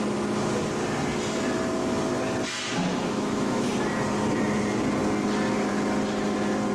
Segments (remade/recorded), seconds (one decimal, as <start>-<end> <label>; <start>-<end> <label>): 0.0-2.9 recorded; 2.9-3.7 remade; 3.7-6.7 recorded